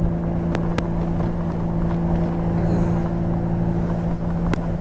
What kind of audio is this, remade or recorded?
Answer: recorded